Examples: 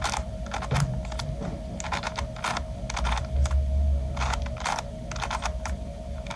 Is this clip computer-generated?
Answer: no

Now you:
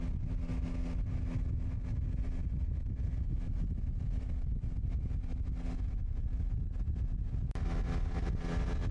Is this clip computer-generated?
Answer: no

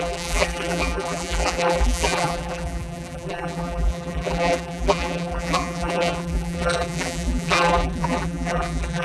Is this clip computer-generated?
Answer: yes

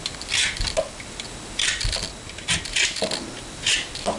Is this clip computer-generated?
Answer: no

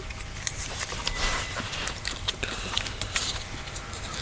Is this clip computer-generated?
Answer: yes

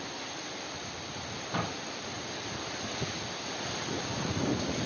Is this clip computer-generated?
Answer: yes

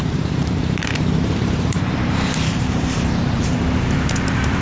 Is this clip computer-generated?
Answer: yes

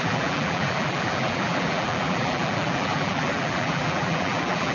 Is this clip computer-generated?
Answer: yes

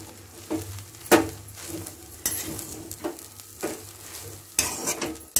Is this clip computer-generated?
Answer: no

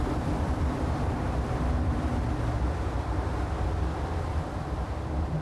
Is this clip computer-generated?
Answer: yes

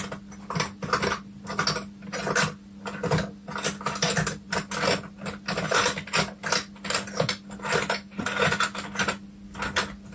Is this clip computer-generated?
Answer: no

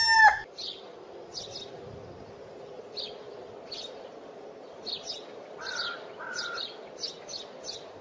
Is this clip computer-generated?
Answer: no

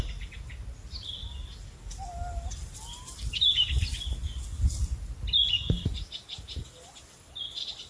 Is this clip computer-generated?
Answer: no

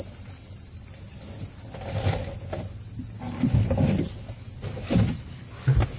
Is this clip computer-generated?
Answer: no